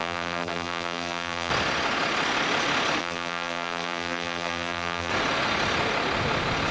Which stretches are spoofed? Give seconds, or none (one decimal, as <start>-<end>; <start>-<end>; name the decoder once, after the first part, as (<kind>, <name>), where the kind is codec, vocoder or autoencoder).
0.0-1.5 (vocoder, BigVGAN v2); 3.0-5.1